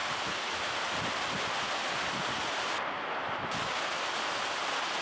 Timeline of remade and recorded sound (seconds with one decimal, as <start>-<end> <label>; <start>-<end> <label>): 0.0-5.0 recorded